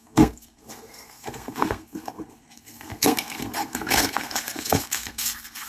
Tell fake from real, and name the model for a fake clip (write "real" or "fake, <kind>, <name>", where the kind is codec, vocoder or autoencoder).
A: fake, codec, SNAC